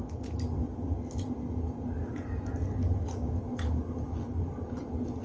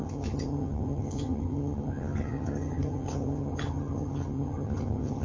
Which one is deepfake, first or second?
second